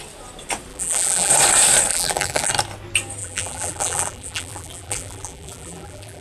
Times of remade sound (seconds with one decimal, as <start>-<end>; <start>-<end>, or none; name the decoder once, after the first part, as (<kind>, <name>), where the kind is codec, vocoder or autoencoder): 0.7-1.3 (vocoder, BigVGAN v2); 1.9-2.5; 3.2-6.2